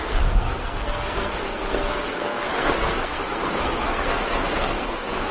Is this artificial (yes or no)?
yes